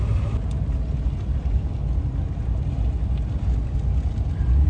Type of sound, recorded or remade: recorded